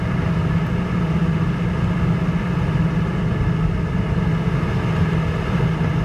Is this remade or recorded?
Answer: recorded